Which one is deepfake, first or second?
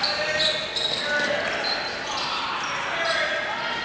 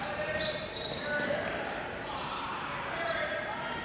second